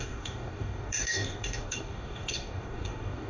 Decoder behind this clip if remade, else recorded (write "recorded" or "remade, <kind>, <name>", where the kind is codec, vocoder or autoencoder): remade, codec, DAC